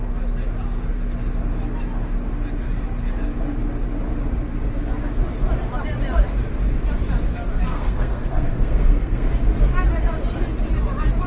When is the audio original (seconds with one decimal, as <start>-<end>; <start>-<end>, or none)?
0.0-7.7; 9.3-11.3